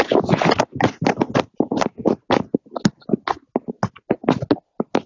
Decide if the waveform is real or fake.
real